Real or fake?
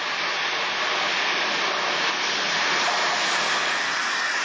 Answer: real